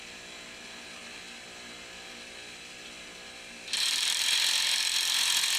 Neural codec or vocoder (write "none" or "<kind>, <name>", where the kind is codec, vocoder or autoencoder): none